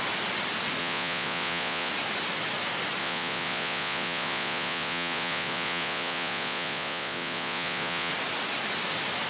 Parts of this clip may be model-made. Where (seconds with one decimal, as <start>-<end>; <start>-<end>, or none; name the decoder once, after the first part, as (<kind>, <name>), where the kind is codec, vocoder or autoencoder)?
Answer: 0.8-1.9 (vocoder, Vocos); 3.0-8.1